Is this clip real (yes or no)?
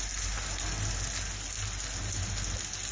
yes